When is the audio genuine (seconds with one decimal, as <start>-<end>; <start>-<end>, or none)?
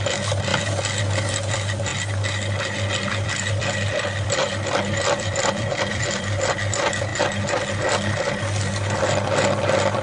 0.5-1.0; 7.1-9.0